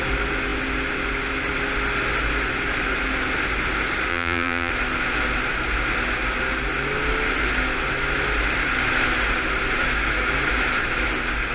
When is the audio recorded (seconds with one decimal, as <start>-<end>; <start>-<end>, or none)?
0.0-4.1; 4.7-11.5